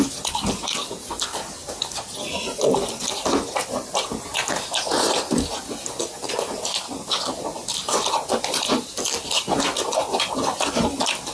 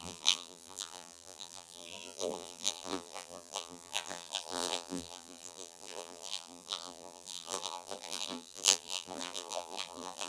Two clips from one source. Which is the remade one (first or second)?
second